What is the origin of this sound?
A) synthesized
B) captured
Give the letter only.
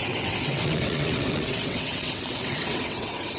A